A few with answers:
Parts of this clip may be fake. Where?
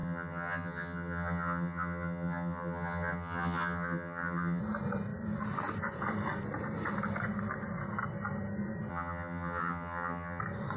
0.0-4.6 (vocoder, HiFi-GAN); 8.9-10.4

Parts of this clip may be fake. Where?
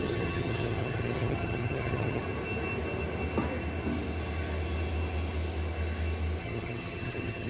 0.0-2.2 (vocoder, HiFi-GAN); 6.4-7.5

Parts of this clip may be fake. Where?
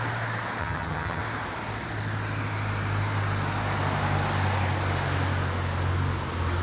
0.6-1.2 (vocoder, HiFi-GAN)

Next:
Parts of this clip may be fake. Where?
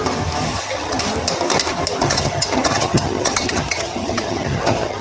0.5-1.0 (vocoder, HiFi-GAN); 2.0-5.0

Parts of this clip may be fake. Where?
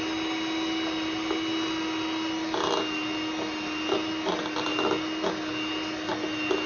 none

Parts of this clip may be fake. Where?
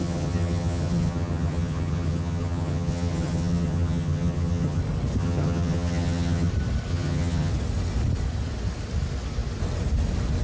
0.0-4.8 (vocoder, HiFi-GAN); 5.2-6.5; 6.9-7.5